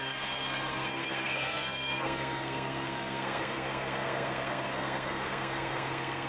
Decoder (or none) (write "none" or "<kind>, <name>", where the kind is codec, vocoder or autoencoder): codec, SNAC